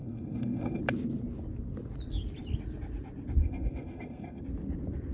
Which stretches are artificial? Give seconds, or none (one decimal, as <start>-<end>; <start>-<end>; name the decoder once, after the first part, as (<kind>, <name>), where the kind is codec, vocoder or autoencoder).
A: 0.0-0.8 (codec, SNAC); 3.4-4.4